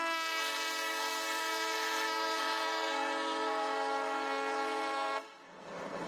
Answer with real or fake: fake